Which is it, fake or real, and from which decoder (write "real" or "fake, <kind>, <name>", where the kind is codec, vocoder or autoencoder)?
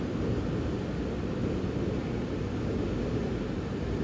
real